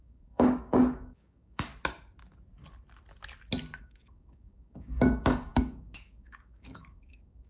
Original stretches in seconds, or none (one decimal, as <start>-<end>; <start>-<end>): 1.7-3.8